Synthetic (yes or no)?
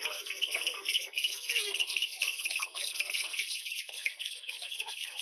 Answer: yes